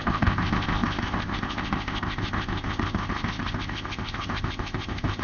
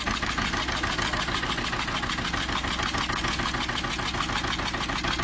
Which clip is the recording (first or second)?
second